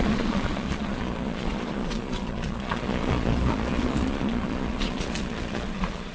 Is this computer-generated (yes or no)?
yes